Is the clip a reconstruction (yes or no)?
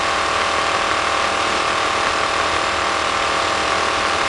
no